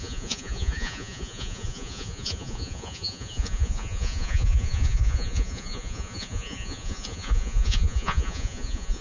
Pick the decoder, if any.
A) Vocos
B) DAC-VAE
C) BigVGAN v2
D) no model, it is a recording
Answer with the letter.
A